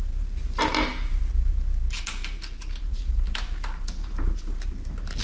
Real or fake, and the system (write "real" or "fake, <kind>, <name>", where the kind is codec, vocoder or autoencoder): real